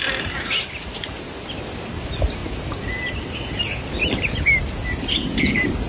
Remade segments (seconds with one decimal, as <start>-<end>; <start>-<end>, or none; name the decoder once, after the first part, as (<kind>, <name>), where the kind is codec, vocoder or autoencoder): none